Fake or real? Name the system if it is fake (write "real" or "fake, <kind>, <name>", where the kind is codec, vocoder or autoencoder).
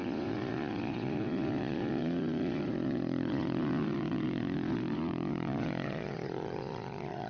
fake, vocoder, Vocos